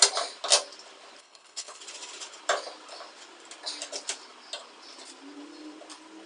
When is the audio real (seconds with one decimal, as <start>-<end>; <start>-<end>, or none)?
0.0-1.2; 1.8-6.3